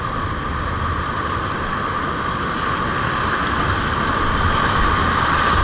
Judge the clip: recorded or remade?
recorded